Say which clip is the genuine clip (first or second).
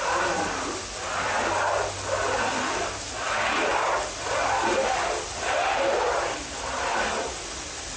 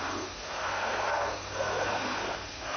first